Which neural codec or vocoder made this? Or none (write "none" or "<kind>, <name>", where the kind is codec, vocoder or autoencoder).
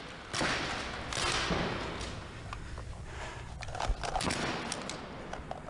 none